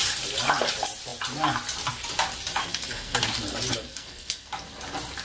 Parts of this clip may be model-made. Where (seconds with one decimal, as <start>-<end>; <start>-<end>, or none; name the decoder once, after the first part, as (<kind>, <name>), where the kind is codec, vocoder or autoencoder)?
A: 2.6-3.3 (codec, SNAC); 3.9-4.5